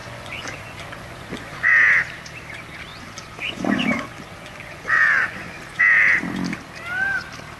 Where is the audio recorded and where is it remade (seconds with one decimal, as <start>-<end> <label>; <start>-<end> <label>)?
0.0-1.7 remade; 1.7-2.9 recorded; 2.9-5.8 remade; 5.8-7.6 recorded